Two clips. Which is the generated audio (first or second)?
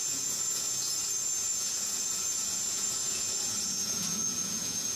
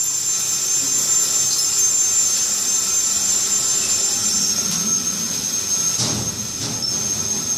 first